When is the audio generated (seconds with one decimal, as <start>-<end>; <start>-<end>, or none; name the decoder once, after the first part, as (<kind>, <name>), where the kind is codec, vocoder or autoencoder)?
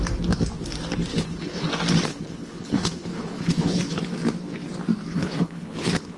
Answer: 1.1-1.6 (codec, HILCodec); 2.1-4.0; 5.1-6.2